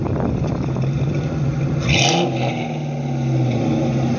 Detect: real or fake real